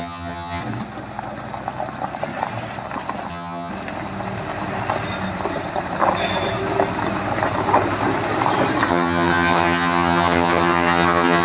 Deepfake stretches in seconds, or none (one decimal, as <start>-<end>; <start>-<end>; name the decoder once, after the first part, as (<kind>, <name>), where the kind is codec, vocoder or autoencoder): 0.0-0.6 (vocoder, HiFi-GAN); 3.3-3.7; 8.9-11.4